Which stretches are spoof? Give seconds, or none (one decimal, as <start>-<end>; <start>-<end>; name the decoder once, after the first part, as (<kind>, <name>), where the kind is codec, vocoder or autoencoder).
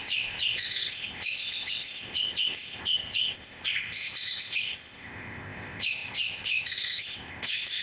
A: 0.0-7.8 (codec, ZipCodec)